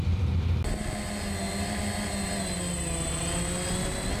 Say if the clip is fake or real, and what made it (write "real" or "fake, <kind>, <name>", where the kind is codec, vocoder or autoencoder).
real